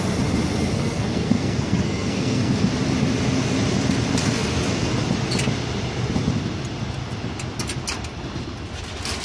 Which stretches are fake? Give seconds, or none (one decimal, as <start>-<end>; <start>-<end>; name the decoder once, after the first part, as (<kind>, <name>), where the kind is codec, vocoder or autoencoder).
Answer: 0.6-2.7 (codec, SNAC); 4.2-4.9